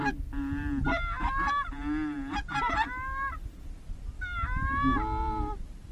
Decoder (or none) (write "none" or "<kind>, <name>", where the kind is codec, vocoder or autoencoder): none